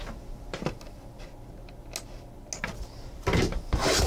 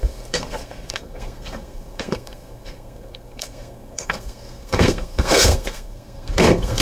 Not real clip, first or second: second